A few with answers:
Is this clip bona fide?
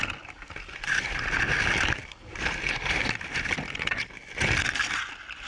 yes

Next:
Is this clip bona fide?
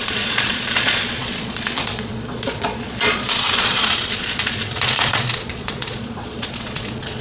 no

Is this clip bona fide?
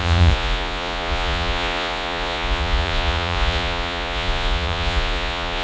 no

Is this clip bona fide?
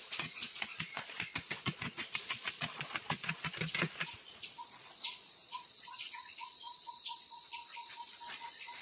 no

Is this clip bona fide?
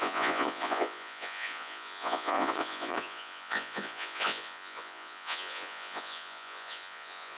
no